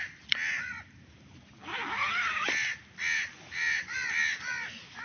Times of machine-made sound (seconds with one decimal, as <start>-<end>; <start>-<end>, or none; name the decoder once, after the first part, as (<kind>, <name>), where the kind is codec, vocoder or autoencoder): 0.7-1.5 (vocoder, BigVGAN v2)